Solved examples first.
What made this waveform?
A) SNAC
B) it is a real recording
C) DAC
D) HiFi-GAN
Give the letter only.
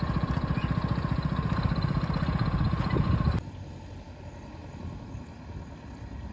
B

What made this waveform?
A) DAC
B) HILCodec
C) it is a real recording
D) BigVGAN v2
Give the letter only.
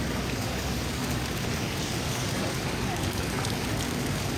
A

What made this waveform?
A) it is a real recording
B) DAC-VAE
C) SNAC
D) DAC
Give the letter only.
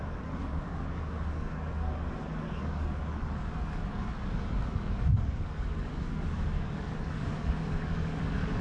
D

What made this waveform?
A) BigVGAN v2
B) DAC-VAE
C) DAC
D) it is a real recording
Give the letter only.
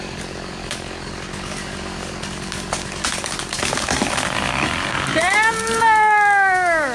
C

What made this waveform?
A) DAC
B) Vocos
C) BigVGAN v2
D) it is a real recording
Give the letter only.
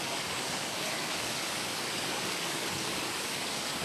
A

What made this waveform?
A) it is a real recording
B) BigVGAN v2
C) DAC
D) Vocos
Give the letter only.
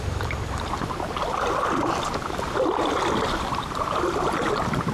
A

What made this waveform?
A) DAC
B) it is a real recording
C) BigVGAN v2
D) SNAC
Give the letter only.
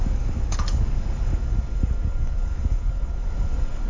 A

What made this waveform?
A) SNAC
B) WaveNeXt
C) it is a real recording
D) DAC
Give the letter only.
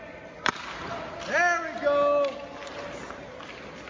C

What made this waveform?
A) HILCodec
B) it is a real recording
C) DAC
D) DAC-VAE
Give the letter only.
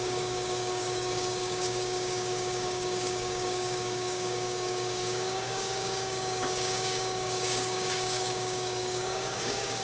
C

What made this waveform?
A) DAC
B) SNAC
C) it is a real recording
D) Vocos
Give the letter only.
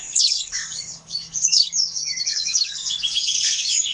A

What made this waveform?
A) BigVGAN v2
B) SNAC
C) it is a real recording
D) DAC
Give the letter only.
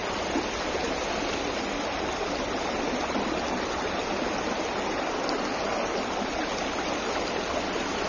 C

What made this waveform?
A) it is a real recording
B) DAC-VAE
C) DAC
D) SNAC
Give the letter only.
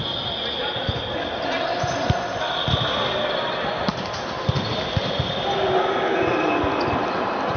A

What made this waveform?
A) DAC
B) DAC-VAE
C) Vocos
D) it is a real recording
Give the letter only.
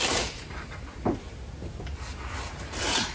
D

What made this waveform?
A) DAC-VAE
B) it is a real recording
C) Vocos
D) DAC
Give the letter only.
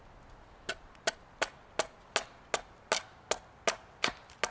B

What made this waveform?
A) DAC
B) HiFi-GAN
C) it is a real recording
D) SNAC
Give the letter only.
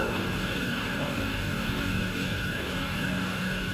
A